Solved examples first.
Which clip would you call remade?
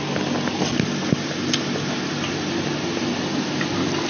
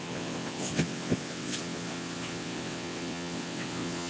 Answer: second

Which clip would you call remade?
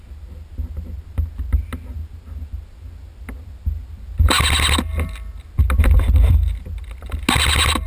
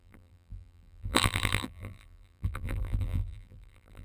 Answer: second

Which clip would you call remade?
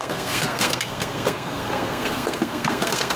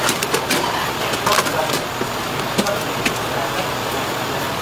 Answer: first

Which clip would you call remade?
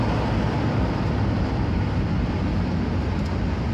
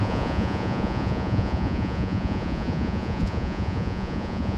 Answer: second